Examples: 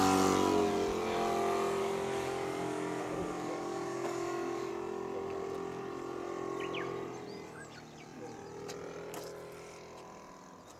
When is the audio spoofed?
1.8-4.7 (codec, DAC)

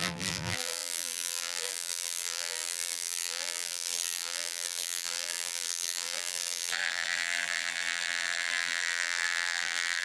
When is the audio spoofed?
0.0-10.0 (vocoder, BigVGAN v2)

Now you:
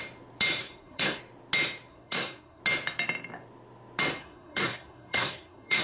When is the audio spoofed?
0.6-1.2 (codec, SNAC); 1.9-2.6; 4.2-5.8

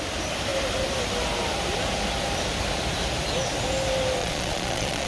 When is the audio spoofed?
4.2-5.1 (vocoder, Vocos)

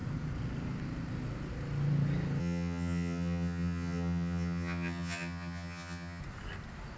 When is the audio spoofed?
2.4-6.2 (vocoder, HiFi-GAN)

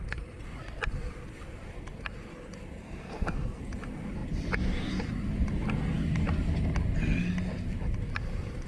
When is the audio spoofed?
2.8-3.6 (codec, SNAC)

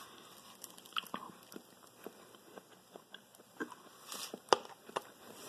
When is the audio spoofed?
none